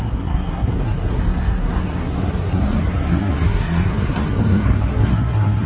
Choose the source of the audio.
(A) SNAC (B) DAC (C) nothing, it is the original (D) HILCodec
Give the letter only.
A